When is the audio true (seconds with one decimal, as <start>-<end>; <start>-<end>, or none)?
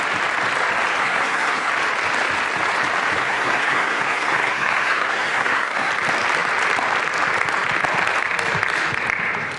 0.0-1.0; 1.7-3.2; 5.9-9.6